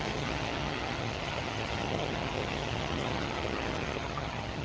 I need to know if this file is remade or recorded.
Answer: remade